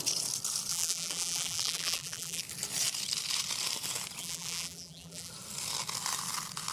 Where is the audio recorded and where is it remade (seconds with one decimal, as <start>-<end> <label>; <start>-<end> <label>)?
0.0-0.7 recorded; 0.7-2.4 remade; 2.4-4.2 recorded; 4.2-5.3 remade; 5.3-6.7 recorded